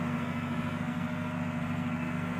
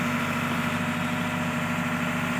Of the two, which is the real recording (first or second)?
second